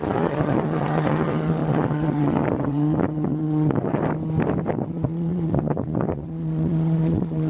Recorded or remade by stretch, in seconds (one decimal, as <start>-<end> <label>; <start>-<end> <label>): 0.0-4.0 remade; 4.0-4.7 recorded; 4.7-7.5 remade